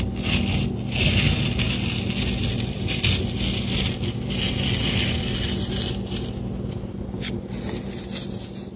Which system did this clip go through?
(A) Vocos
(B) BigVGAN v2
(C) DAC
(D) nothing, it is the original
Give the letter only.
D